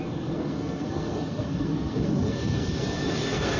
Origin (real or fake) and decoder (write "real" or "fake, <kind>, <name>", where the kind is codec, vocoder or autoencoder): fake, codec, SNAC